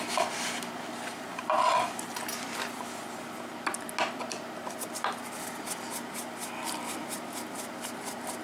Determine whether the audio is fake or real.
real